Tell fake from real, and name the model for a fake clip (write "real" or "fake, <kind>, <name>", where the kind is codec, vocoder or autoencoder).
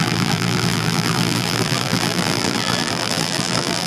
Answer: fake, vocoder, BigVGAN v2